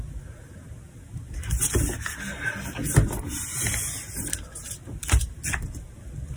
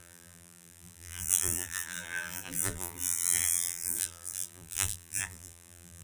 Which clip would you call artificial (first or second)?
second